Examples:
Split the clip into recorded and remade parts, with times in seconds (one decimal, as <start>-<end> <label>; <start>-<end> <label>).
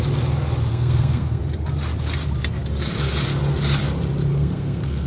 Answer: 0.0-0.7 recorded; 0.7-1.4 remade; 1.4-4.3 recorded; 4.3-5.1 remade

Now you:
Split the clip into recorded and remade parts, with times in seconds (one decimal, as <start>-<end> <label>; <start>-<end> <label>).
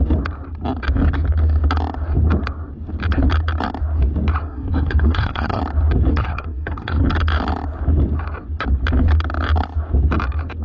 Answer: 0.0-4.4 recorded; 4.4-5.6 remade; 5.6-6.1 recorded; 6.1-7.0 remade; 7.0-10.6 recorded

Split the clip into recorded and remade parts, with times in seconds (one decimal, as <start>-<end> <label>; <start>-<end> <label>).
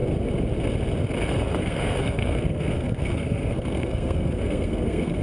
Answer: 0.0-1.6 recorded; 1.6-5.2 remade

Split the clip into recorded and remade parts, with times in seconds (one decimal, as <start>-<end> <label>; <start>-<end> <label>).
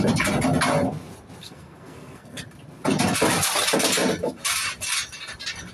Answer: 0.0-1.4 recorded; 1.4-2.4 remade; 2.4-5.7 recorded